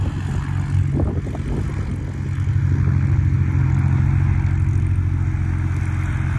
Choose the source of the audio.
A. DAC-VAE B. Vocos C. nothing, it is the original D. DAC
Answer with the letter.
C